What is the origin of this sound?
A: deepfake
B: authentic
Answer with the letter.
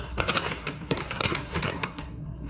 A